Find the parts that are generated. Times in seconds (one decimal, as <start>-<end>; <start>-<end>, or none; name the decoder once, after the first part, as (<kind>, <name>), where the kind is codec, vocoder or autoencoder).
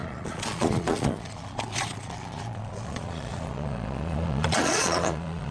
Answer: 0.0-5.5 (vocoder, Vocos)